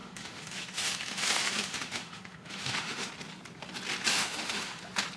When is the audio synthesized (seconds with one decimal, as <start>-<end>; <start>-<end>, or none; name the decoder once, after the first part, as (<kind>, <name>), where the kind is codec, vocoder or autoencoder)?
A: 0.0-3.1 (autoencoder, DAC-VAE); 4.1-4.8